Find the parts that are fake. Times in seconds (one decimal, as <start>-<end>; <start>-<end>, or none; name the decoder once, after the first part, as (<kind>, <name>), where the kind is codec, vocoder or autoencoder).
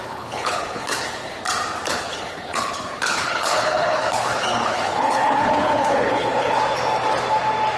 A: 0.0-1.4 (codec, HILCodec); 1.9-6.6